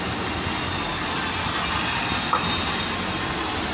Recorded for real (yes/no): yes